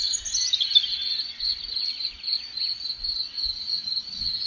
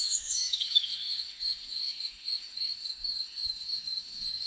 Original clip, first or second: first